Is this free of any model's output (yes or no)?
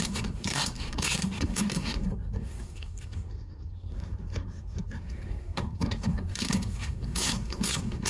no